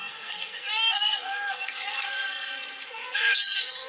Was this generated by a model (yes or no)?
yes